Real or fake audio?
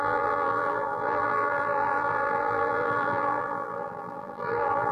fake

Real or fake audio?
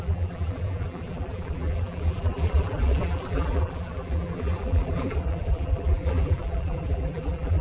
fake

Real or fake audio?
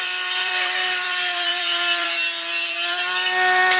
fake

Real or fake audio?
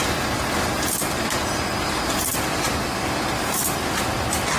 fake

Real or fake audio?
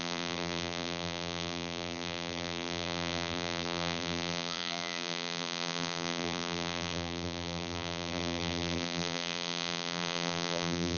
fake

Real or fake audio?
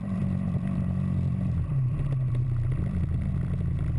fake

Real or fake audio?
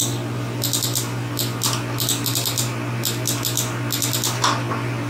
real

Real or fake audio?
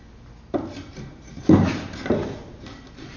real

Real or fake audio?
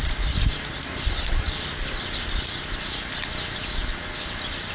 real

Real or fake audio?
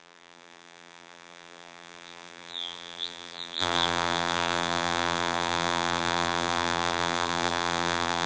fake